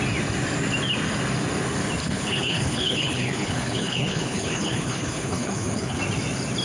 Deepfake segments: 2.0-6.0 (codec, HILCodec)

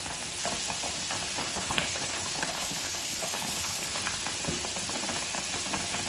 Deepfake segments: 1.4-4.0 (codec, HILCodec)

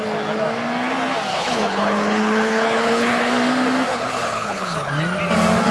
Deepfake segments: 1.3-3.3 (codec, HILCodec); 3.9-4.9

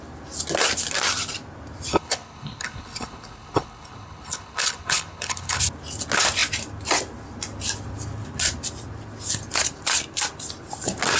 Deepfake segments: 1.9-5.6 (codec, HILCodec)

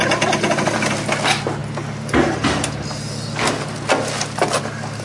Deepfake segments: none